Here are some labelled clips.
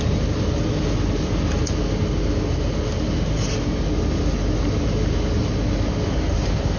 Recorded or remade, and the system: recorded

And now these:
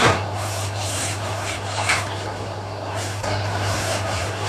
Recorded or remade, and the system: remade, codec, SNAC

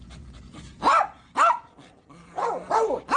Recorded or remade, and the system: recorded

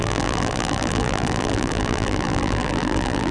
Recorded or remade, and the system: remade, vocoder, BigVGAN v2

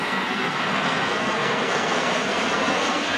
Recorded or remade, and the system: remade, codec, SNAC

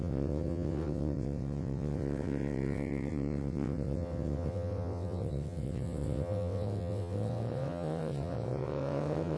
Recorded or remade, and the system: remade, vocoder, WaveNeXt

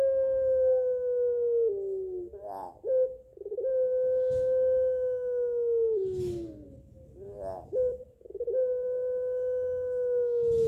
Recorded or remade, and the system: recorded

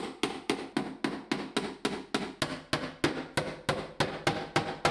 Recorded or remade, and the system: recorded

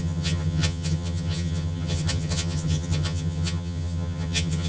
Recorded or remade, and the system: remade, vocoder, HiFi-GAN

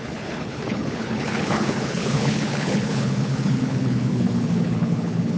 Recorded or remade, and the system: remade, codec, HILCodec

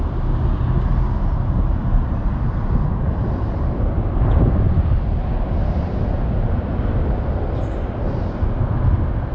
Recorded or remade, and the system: recorded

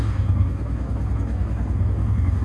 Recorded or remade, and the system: remade, codec, DAC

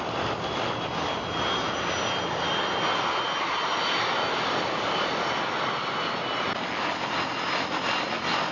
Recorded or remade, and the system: recorded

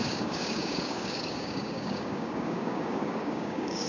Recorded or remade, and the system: remade, codec, DAC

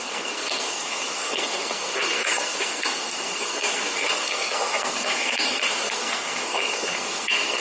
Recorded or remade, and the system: remade, codec, SNAC